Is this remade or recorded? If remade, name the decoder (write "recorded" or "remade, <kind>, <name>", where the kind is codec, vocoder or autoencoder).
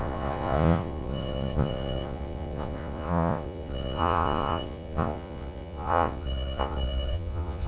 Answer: remade, vocoder, Vocos